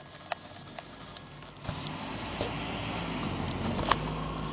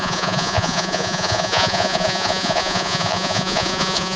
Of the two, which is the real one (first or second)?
first